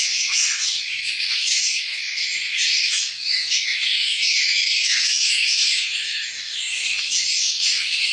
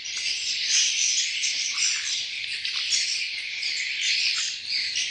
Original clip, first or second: second